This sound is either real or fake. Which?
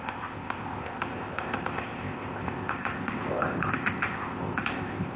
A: fake